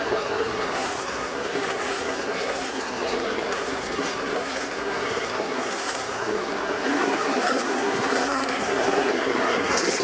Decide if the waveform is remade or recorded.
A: remade